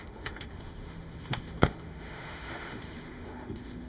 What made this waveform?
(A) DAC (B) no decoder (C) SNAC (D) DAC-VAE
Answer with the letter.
D